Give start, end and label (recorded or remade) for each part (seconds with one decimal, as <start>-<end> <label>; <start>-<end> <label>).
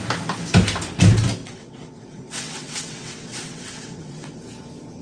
0.0-1.4 recorded; 1.4-4.4 remade; 4.4-5.0 recorded